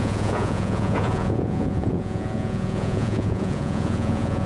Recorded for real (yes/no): no